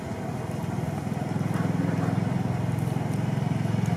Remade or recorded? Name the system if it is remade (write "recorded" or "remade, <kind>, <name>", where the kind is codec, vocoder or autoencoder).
recorded